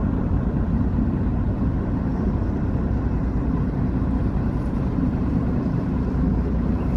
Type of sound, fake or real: fake